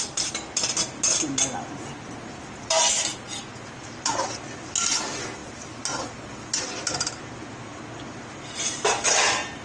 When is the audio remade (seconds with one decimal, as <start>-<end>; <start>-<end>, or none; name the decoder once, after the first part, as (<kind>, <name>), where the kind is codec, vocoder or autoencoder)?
none